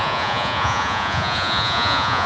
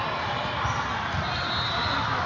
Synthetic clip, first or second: first